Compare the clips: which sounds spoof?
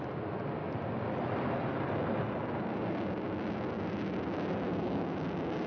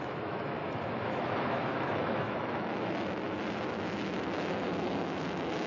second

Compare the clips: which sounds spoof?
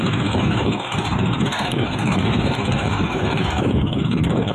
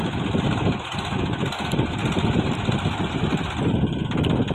first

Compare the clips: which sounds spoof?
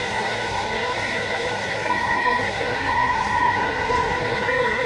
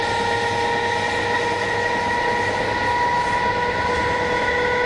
first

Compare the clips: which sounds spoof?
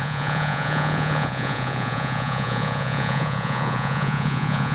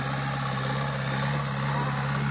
first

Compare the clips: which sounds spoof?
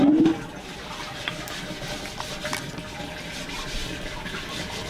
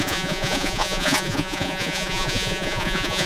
second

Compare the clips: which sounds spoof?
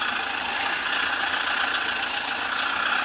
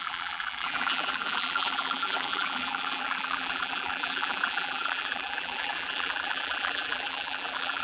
second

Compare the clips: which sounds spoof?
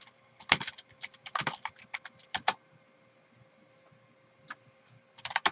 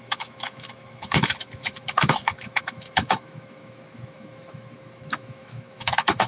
second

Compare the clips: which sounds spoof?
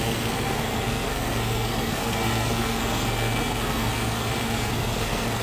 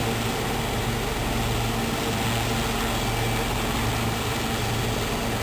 first